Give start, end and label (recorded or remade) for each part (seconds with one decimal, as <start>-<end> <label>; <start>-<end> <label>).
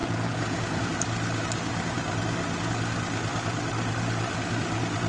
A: 0.0-0.8 remade; 0.8-5.1 recorded